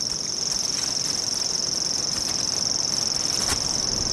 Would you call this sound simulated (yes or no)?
no